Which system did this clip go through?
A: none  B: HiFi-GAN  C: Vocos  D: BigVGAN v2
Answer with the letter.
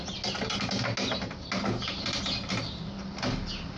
A